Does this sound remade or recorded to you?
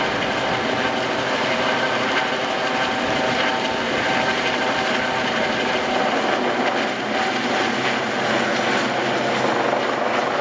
recorded